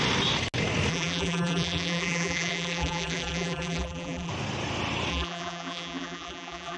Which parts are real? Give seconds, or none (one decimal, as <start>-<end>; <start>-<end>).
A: 0.0-0.9; 4.3-5.1